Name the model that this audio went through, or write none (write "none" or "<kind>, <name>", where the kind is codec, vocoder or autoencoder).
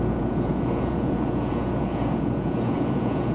vocoder, Vocos